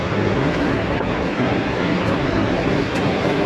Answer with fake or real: fake